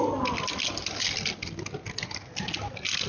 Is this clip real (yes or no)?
yes